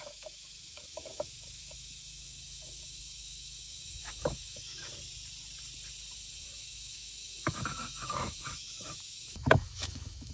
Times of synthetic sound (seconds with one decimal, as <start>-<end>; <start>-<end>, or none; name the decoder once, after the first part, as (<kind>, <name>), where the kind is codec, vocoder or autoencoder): 0.0-4.9 (autoencoder, DAC-VAE); 6.3-10.3